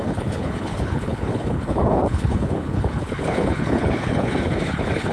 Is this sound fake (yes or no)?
yes